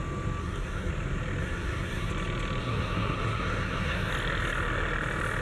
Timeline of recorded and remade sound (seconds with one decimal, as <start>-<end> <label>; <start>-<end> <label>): 0.0-0.4 recorded; 0.4-0.9 remade; 0.9-1.4 recorded; 1.4-2.1 remade; 2.1-2.6 recorded; 2.6-4.1 remade; 4.1-5.4 recorded